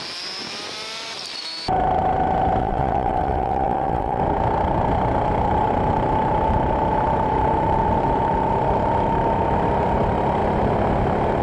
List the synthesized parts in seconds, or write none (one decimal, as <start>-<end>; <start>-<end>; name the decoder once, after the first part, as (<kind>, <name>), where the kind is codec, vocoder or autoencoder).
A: 2.6-4.2 (vocoder, WaveNeXt)